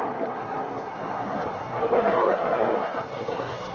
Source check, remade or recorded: remade